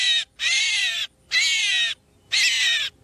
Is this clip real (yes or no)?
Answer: yes